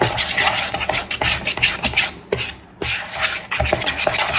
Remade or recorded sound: recorded